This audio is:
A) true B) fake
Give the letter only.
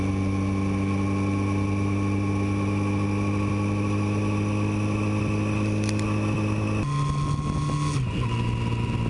A